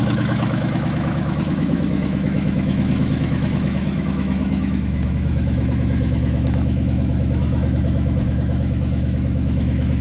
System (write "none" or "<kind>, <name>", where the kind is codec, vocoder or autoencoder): autoencoder, DAC-VAE